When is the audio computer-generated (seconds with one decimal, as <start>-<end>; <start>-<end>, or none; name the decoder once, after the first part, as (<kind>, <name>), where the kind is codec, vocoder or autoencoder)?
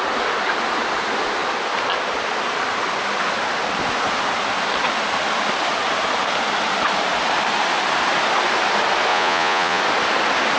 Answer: 9.1-9.8 (vocoder, Vocos)